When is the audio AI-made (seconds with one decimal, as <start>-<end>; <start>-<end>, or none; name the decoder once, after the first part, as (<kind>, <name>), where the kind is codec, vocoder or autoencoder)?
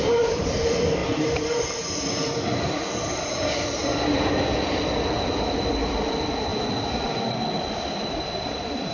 0.0-1.0 (vocoder, BigVGAN v2); 5.5-6.5; 7.7-8.9